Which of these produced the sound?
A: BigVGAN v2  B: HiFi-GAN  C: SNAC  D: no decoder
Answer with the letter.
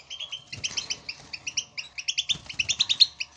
D